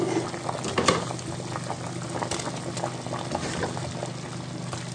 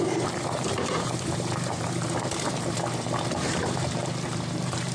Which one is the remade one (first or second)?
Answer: second